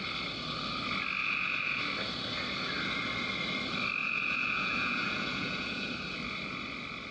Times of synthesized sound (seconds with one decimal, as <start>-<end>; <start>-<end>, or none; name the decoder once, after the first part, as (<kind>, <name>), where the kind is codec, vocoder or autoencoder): 1.2-1.8 (vocoder, Vocos); 4.0-5.9